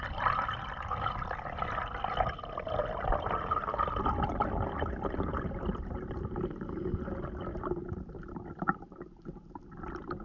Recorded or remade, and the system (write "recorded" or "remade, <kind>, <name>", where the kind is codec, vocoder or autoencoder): recorded